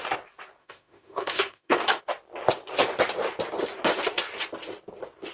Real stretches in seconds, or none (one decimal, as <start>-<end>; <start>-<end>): 0.0-0.6; 2.0-5.3